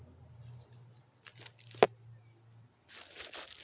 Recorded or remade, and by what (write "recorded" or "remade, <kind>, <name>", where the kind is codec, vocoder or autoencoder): recorded